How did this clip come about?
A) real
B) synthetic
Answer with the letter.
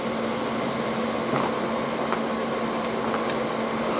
A